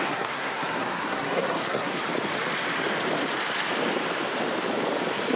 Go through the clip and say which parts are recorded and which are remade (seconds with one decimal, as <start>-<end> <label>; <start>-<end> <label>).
0.0-2.0 remade; 2.0-5.3 recorded